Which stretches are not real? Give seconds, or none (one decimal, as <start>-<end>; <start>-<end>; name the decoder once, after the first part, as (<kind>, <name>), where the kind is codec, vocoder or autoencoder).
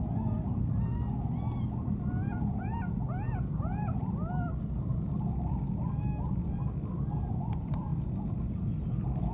none